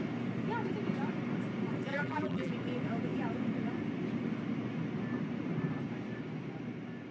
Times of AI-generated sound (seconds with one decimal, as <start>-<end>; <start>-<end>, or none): 1.9-2.5